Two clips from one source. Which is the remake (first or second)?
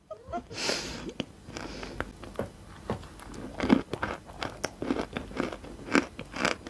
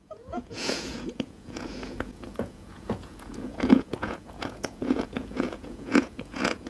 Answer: second